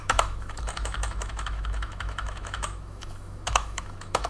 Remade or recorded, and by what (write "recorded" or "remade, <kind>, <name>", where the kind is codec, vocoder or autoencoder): remade, autoencoder, DAC-VAE